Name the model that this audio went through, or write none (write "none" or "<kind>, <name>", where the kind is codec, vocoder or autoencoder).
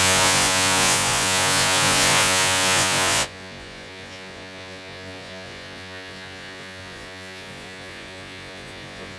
vocoder, Vocos